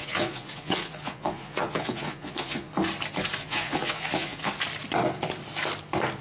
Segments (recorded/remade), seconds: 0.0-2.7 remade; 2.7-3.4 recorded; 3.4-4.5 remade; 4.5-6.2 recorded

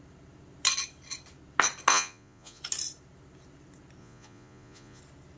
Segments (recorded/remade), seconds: 0.0-1.9 recorded; 1.9-2.6 remade; 2.6-4.0 recorded; 4.0-5.0 remade; 5.0-5.4 recorded

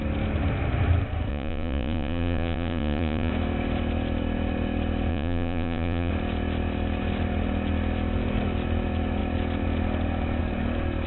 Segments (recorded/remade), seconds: 0.0-1.3 recorded; 1.3-3.3 remade; 3.3-5.1 recorded; 5.1-6.1 remade; 6.1-11.1 recorded